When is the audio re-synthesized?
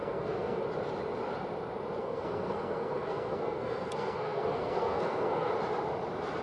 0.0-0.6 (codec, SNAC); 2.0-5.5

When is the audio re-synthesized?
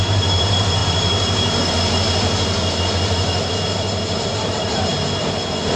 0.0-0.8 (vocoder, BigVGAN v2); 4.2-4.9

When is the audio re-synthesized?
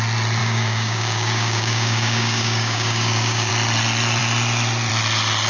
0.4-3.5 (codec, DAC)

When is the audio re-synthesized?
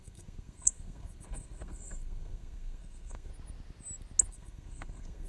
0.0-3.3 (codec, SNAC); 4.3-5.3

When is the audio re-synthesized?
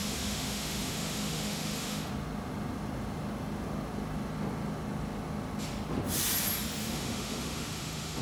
0.0-2.1 (autoencoder, DAC-VAE); 6.8-8.2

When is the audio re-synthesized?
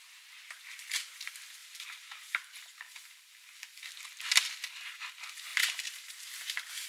1.6-3.9 (vocoder, BigVGAN v2); 5.5-6.2